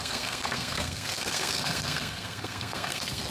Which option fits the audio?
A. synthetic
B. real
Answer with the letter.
A